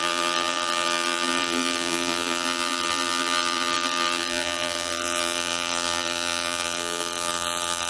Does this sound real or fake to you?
fake